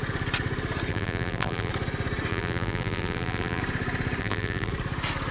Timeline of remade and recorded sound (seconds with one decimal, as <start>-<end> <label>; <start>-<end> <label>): 0.0-0.9 recorded; 0.9-1.7 remade; 1.7-2.3 recorded; 2.3-3.6 remade; 3.6-4.2 recorded; 4.2-4.7 remade; 4.7-5.3 recorded